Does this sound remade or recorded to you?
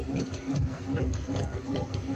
remade